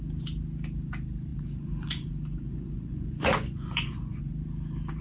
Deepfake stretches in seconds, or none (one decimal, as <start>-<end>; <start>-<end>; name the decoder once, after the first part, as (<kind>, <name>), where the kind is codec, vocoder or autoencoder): 1.3-4.3 (vocoder, Vocos)